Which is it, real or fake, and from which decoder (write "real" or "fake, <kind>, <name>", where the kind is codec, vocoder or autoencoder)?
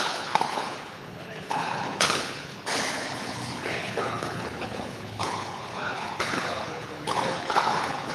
fake, codec, HILCodec